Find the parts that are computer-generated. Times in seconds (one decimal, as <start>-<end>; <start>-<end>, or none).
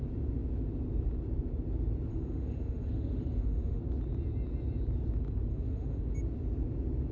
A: 2.1-3.8; 5.5-6.0